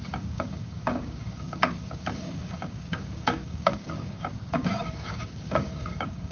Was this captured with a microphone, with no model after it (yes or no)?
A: no